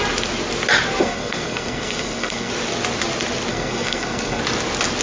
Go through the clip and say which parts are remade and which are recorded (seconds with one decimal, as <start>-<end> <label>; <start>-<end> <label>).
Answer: 0.0-1.0 recorded; 1.0-2.5 remade; 2.5-3.5 recorded; 3.5-4.4 remade; 4.4-5.0 recorded